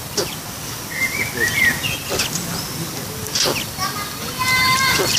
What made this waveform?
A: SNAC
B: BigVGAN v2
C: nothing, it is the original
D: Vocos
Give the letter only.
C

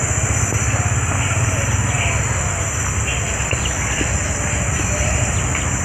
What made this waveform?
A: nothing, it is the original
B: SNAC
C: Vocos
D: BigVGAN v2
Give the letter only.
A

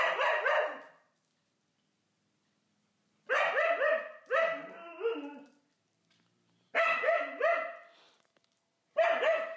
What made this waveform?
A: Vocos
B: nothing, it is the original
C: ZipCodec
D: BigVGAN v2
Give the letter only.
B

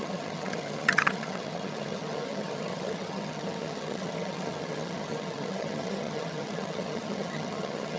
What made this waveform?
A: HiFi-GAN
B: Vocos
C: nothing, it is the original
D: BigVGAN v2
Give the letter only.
A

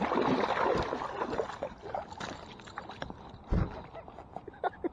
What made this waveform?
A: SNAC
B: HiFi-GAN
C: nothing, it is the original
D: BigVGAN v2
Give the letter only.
C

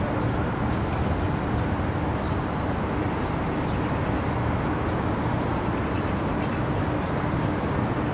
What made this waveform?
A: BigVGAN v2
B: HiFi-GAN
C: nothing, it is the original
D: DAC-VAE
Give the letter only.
C